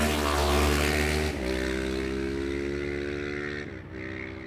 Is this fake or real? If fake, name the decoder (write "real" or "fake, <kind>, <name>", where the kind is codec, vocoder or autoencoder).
real